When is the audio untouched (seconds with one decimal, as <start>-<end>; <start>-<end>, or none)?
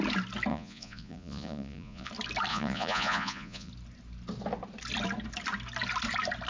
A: 0.0-0.5; 2.1-2.5; 3.7-6.5